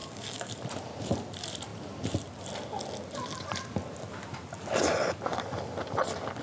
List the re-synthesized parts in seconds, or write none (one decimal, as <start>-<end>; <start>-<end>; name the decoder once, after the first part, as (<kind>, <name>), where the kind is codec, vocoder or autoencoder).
0.0-0.6 (codec, DAC)